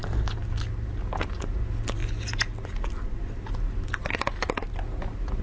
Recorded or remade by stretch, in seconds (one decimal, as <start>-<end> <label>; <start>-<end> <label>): 0.0-5.4 recorded